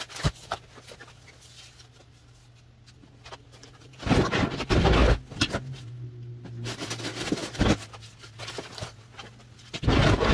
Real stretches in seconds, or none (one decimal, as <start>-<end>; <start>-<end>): 0.0-10.3